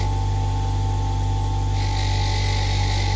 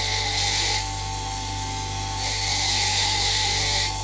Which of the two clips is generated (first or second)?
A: second